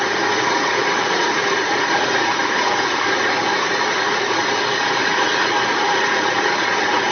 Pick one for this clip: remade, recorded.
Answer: remade